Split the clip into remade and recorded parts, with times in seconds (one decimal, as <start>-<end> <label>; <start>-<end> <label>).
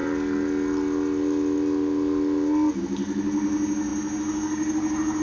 0.0-5.2 recorded